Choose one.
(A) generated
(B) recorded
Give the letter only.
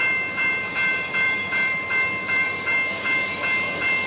A